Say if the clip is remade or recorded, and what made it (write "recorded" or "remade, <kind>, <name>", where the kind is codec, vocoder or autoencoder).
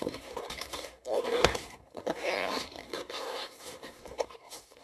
remade, codec, SNAC